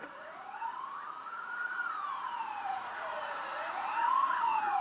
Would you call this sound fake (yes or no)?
yes